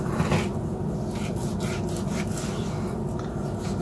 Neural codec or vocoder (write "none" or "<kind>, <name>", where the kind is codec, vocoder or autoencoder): none